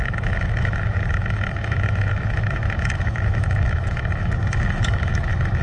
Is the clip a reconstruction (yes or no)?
yes